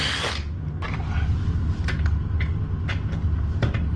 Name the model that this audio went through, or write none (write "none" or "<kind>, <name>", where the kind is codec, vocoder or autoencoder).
none